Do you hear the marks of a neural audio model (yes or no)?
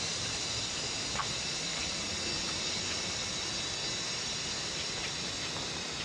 no